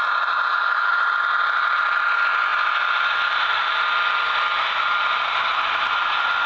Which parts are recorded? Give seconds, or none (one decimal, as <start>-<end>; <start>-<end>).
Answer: 0.0-0.5; 1.0-6.5